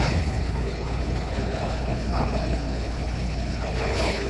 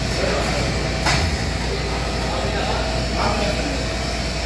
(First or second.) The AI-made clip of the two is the first